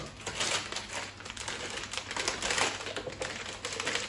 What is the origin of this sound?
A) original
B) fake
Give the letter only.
A